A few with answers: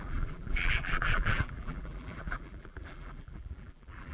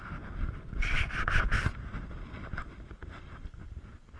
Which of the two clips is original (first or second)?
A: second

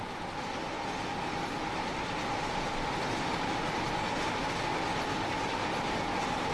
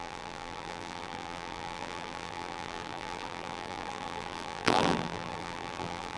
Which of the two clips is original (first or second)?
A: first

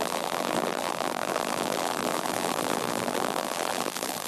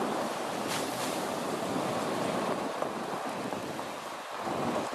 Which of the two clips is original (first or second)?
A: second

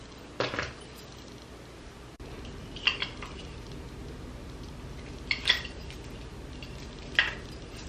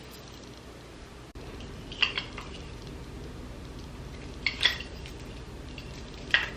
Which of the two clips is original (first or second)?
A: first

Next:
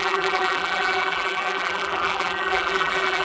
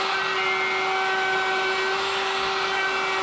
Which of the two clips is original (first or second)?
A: second